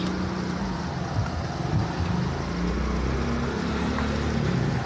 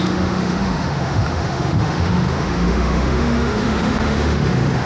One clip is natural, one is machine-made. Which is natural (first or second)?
first